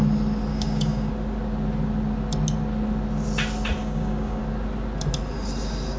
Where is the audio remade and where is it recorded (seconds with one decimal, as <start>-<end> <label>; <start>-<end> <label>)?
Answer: 0.0-0.5 recorded; 0.5-1.1 remade; 1.1-3.8 recorded; 3.8-4.4 remade; 4.4-6.0 recorded